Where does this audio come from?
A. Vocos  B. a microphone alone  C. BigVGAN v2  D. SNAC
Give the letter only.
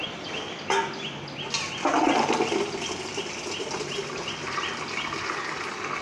B